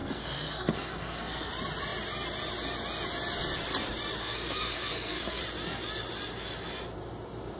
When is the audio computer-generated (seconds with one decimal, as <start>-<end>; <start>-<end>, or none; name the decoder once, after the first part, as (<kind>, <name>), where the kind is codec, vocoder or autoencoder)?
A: 0.0-1.5 (codec, SNAC); 4.2-5.4